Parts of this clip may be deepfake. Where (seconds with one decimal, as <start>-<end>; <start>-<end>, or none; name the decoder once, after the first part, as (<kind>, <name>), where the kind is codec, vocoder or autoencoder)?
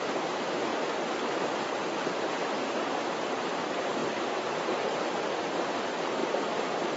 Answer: none